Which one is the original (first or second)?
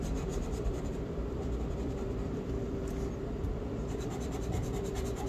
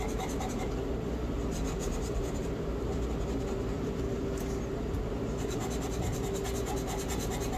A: second